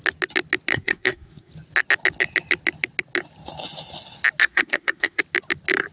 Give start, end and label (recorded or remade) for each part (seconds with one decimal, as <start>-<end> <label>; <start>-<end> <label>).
0.0-0.7 recorded; 0.7-1.5 remade; 1.5-4.4 recorded; 4.4-5.2 remade; 5.2-5.9 recorded